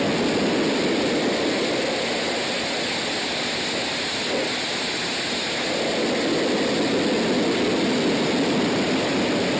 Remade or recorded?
recorded